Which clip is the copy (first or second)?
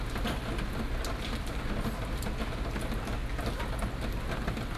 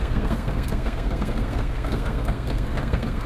second